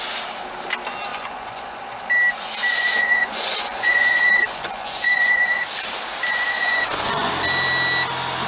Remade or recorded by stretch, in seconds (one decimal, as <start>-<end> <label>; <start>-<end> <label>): 0.0-1.1 recorded; 1.1-1.8 remade; 1.8-2.7 recorded; 2.7-5.6 remade; 5.6-6.3 recorded; 6.3-7.3 remade; 7.3-8.5 recorded